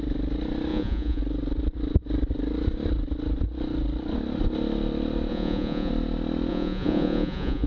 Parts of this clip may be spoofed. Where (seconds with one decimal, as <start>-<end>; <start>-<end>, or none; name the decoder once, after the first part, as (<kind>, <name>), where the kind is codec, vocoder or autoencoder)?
0.7-1.2 (vocoder, Vocos); 5.3-5.9; 6.5-7.7